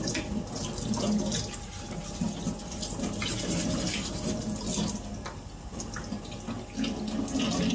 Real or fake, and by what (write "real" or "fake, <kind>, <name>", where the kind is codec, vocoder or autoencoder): real